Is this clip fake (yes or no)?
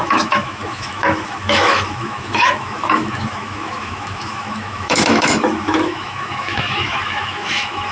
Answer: yes